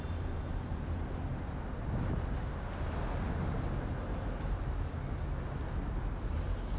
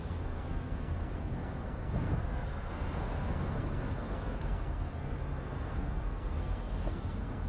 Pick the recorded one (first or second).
first